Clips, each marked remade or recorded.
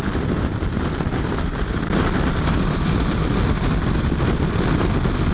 recorded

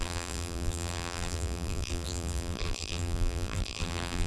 remade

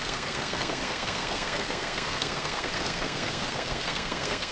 remade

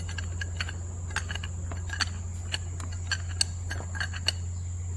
recorded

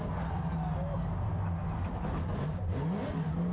recorded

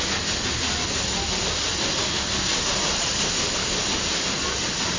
recorded